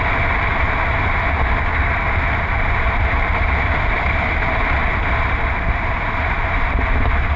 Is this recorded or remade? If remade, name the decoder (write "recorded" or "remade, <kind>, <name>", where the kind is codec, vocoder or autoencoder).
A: recorded